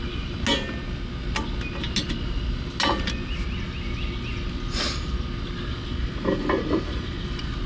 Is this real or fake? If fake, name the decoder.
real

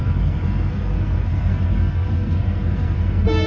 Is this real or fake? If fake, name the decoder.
fake, codec, SNAC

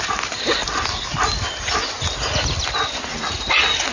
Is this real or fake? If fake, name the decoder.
real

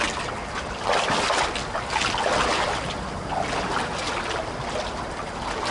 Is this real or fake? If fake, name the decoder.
real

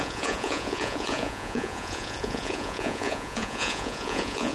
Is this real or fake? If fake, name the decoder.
fake, vocoder, Vocos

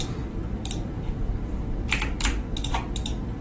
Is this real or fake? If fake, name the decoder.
fake, vocoder, BigVGAN v2